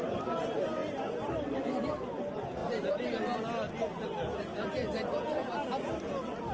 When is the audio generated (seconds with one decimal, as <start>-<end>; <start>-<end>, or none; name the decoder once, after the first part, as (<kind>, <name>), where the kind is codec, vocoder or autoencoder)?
none